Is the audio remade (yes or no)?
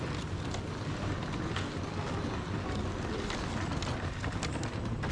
no